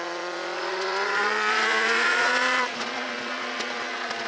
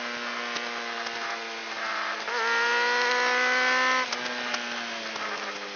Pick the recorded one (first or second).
second